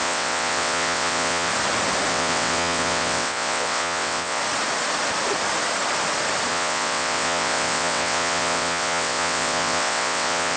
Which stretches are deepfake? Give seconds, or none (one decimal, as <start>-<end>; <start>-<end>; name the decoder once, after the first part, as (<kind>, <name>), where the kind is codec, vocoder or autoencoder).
0.0-1.5 (vocoder, WaveNeXt); 2.1-4.4; 6.5-10.6